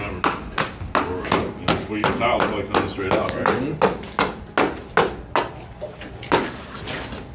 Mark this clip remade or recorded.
recorded